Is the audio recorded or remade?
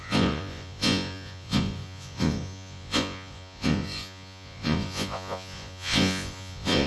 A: remade